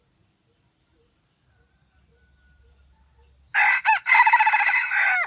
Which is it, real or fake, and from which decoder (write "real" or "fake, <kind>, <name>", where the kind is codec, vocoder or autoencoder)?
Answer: real